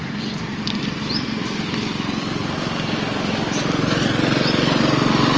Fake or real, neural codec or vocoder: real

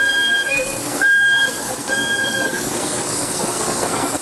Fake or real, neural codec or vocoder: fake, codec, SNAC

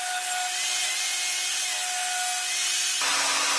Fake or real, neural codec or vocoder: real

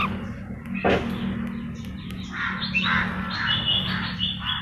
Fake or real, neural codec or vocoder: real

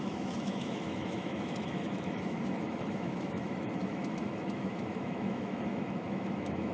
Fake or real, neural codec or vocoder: fake, autoencoder, DAC-VAE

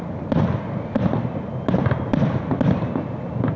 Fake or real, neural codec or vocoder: real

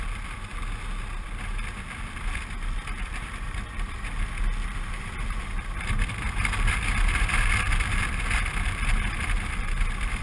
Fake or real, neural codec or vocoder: fake, vocoder, BigVGAN v2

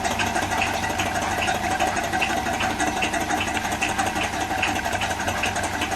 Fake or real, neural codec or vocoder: real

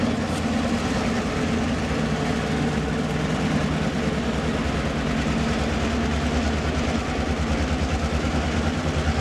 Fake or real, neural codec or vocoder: real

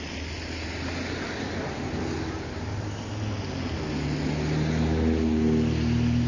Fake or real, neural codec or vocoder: real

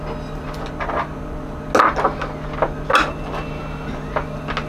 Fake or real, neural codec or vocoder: real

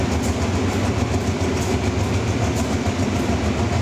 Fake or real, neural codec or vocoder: real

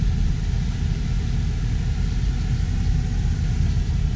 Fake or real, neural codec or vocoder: real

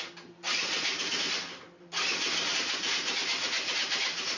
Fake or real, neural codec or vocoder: real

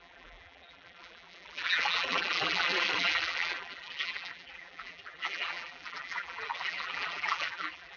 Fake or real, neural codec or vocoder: fake, vocoder, BigVGAN v2